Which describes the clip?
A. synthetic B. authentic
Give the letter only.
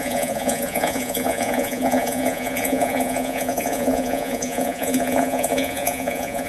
A